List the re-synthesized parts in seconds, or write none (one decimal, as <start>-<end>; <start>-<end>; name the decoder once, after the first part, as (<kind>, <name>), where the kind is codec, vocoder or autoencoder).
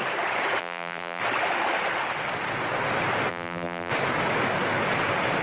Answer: 0.6-1.2 (vocoder, BigVGAN v2); 3.3-3.9